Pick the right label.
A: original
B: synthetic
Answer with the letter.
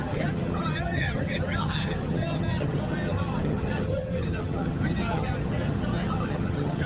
B